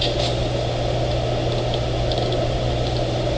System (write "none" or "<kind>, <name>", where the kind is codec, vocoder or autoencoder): none